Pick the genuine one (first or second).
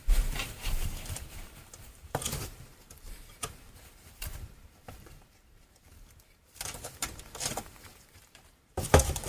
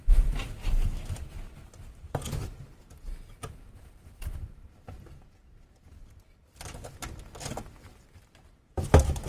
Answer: second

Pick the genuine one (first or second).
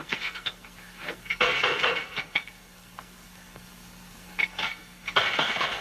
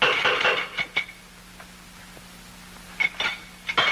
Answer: second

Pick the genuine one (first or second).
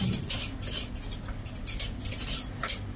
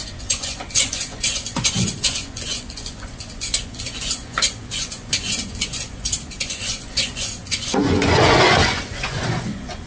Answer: first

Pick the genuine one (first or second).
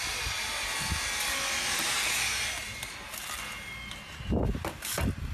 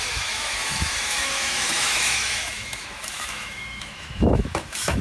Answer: first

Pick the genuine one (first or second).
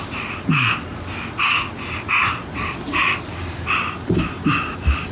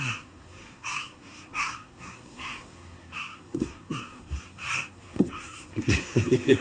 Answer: first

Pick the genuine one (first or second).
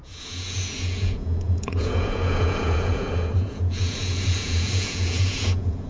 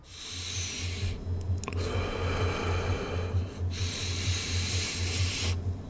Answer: second